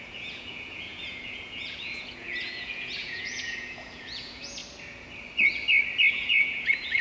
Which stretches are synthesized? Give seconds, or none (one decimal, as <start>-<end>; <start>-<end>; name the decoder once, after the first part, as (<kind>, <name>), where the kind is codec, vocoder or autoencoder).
0.0-4.6 (vocoder, Vocos); 6.1-7.0